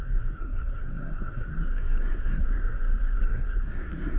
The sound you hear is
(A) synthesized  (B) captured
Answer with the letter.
A